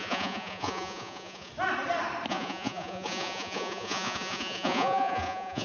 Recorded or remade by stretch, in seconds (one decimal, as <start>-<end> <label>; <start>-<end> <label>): 0.0-1.5 remade; 1.5-2.3 recorded; 2.3-5.6 remade